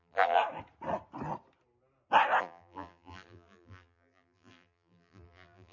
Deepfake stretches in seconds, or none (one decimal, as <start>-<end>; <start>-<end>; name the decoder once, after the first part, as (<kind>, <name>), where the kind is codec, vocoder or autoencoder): 0.0-0.4 (vocoder, BigVGAN v2); 2.4-5.7